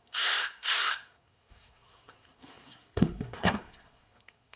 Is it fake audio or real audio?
fake